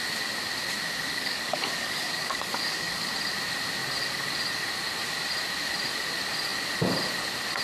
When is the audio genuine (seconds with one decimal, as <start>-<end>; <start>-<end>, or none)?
0.0-1.1; 3.1-7.6